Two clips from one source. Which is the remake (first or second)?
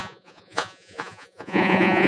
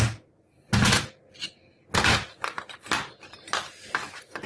first